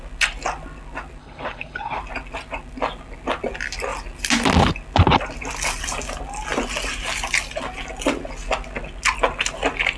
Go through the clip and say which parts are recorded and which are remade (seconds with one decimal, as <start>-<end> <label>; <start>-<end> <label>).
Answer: 0.0-1.2 recorded; 1.2-2.0 remade; 2.0-10.0 recorded